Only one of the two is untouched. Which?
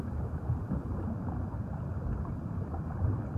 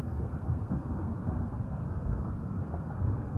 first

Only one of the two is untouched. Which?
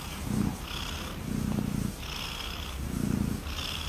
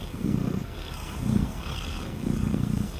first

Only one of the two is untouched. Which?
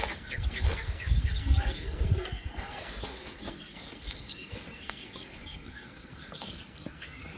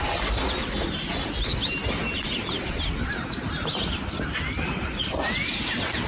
second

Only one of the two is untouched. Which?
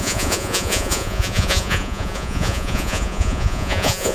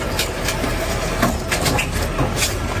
second